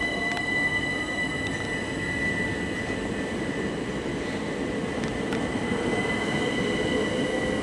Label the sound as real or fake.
real